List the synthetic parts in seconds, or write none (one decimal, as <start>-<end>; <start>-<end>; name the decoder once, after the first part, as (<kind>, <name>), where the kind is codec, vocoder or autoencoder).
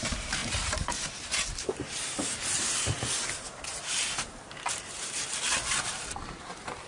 0.0-0.4 (vocoder, BigVGAN v2); 4.4-6.9